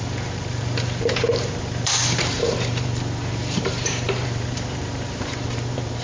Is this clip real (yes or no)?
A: no